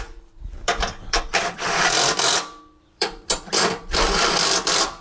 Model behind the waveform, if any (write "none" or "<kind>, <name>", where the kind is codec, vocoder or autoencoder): vocoder, BigVGAN v2